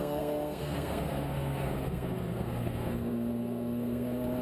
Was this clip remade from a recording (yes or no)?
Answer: yes